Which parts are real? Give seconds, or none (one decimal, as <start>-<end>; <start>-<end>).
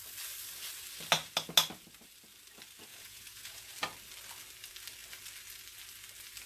0.0-2.9; 3.7-6.5